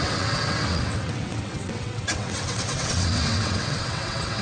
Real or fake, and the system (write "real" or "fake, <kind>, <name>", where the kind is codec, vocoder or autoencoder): fake, vocoder, WaveNeXt